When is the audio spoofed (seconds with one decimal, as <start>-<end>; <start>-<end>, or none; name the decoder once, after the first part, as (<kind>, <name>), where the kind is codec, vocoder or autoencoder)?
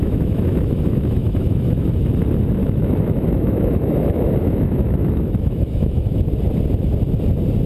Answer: 0.0-2.0 (autoencoder, DAC-VAE); 2.6-6.3